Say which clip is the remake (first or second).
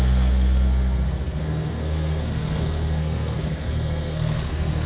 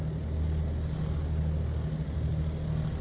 first